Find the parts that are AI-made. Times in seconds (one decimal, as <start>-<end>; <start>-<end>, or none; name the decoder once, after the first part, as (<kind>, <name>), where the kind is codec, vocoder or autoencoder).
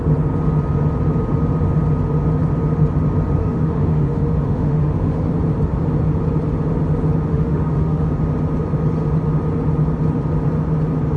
3.4-5.3 (autoencoder, DAC-VAE); 7.3-8.1